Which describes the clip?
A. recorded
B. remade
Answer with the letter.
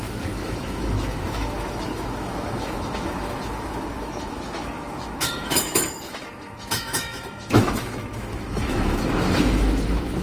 B